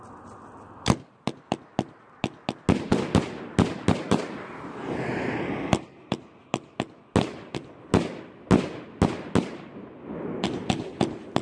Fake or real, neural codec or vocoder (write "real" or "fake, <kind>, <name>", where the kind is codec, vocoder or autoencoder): real